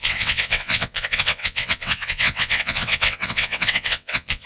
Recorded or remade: remade